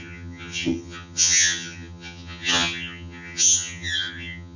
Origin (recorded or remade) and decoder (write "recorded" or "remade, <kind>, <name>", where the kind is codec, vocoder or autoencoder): remade, vocoder, HiFi-GAN